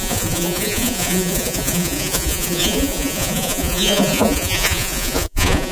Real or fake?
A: fake